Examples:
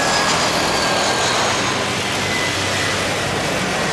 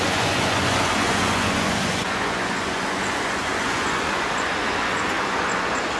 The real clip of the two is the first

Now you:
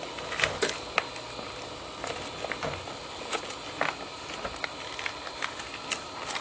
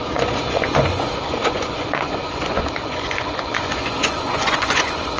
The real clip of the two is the first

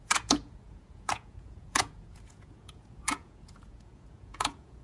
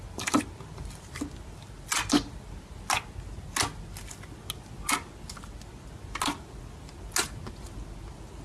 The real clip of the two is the second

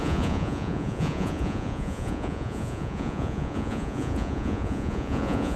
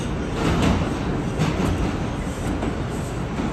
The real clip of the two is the second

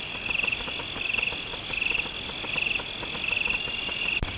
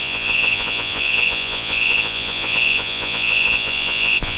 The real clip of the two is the first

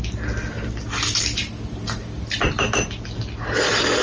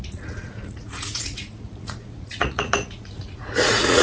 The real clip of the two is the first